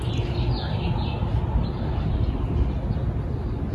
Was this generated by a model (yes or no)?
no